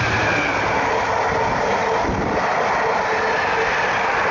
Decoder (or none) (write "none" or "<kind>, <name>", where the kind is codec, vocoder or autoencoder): none